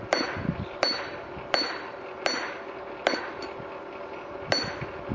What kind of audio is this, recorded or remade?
recorded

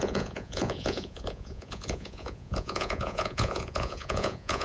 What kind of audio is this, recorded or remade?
remade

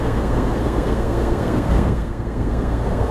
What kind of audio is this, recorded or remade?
remade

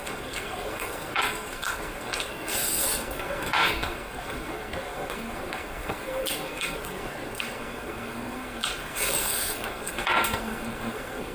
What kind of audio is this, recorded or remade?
remade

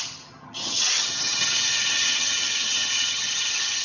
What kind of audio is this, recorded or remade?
remade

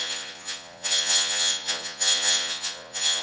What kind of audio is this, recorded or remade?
remade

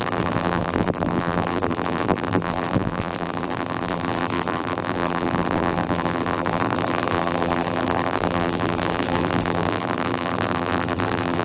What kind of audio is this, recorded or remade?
remade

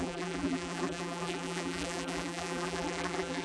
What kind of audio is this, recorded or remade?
remade